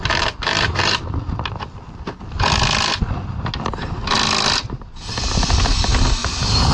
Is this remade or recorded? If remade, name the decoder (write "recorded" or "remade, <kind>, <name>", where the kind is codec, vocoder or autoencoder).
recorded